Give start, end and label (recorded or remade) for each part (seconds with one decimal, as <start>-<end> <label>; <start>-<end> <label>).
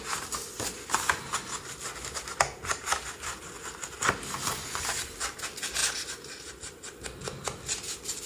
0.0-8.3 recorded